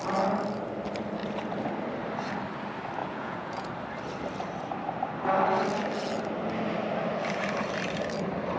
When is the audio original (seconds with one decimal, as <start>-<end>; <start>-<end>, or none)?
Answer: 0.0-3.0; 3.7-8.6